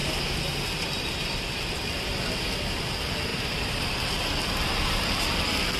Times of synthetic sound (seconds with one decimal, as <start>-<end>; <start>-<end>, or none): 3.3-3.8